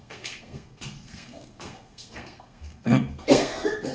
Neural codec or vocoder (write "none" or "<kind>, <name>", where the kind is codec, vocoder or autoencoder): codec, SNAC